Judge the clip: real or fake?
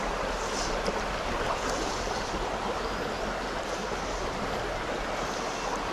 real